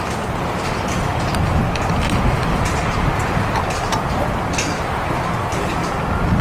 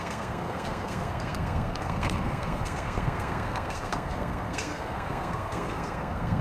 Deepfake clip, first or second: second